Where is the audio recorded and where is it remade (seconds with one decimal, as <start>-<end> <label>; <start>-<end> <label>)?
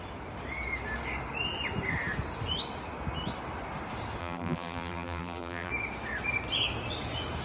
0.0-4.2 recorded; 4.2-5.7 remade; 5.7-7.4 recorded